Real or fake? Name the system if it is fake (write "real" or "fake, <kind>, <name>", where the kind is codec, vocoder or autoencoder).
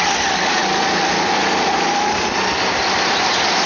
real